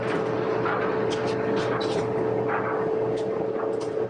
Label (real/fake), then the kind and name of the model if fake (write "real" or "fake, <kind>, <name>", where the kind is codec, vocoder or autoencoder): real